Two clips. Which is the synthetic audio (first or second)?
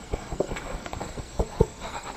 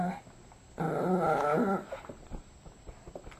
first